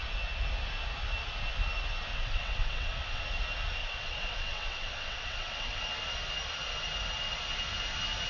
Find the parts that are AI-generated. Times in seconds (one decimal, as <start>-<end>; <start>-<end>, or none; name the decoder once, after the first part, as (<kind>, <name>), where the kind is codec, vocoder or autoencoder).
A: 2.1-3.2 (vocoder, WaveNeXt); 3.8-5.8